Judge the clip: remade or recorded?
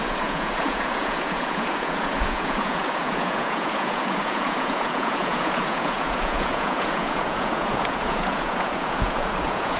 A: remade